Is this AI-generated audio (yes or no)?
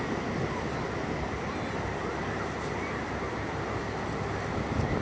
no